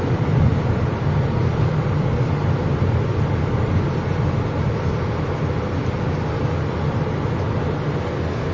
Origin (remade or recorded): recorded